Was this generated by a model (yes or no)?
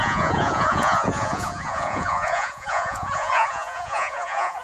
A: yes